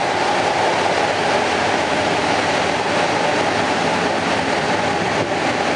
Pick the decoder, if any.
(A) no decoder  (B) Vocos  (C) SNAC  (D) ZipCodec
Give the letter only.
A